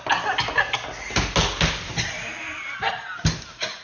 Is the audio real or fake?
real